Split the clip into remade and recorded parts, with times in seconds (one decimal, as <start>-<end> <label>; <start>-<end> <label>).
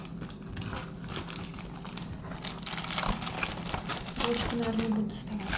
0.0-5.6 recorded